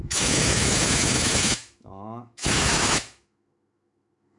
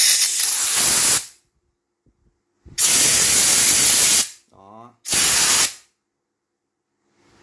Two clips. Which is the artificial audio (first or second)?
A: first